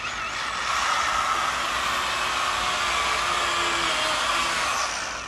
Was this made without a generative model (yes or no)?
yes